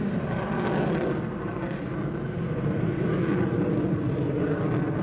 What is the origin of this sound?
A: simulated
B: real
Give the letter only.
A